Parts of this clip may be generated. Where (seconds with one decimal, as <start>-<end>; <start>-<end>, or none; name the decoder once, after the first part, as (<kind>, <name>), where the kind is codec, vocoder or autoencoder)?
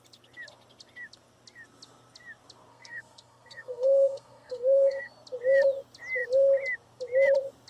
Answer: 2.7-5.1 (codec, SNAC)